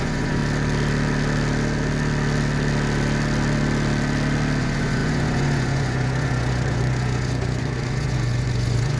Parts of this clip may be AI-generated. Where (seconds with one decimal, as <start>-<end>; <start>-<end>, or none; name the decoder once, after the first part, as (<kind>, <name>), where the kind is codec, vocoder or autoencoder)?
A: 0.0-0.4 (vocoder, Vocos); 4.6-9.0